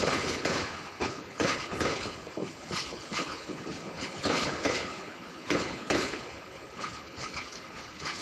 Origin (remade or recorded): remade